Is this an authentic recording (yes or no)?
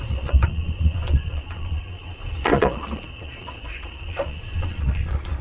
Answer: no